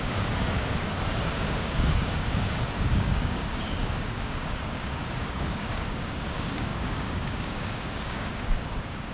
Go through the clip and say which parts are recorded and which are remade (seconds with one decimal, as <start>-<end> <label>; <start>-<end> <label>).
0.0-9.1 remade